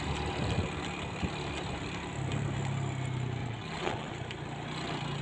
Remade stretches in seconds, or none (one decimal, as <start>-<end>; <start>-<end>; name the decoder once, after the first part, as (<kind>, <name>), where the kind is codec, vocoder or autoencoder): 3.4-4.1 (vocoder, WaveNeXt)